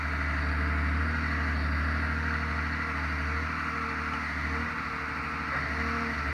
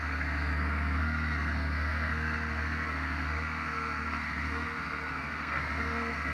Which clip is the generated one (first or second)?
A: second